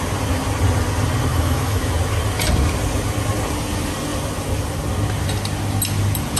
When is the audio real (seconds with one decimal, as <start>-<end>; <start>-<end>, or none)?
0.0-1.3; 1.9-6.4

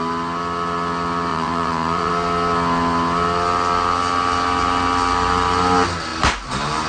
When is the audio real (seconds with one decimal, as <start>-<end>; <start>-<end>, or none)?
0.0-1.3; 2.1-6.9

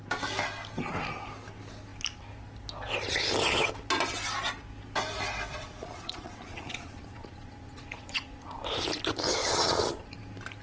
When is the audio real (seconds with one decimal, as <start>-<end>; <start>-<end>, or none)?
0.0-5.5; 8.6-9.4; 10.1-10.6